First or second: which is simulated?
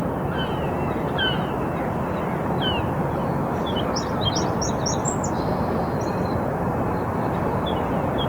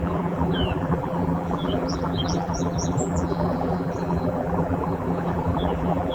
second